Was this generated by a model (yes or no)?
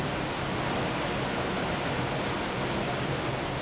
no